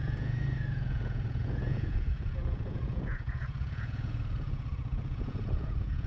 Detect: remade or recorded remade